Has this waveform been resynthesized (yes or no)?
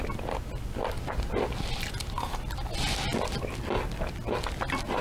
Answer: no